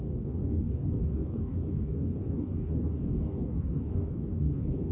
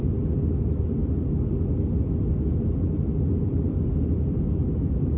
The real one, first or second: second